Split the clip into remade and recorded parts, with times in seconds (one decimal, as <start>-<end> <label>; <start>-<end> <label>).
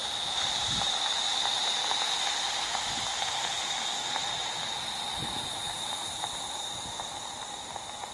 0.0-0.9 remade; 0.9-4.2 recorded; 4.2-6.8 remade; 6.8-8.1 recorded